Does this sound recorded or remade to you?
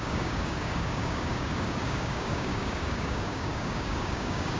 remade